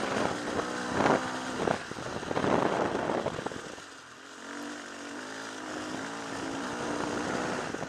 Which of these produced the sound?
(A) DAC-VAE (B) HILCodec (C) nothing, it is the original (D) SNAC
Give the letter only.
C